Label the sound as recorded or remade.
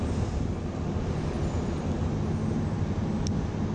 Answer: recorded